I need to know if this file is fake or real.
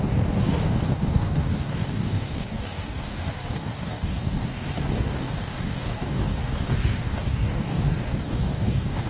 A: fake